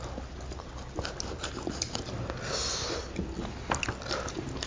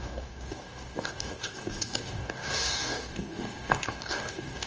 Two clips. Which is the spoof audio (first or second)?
second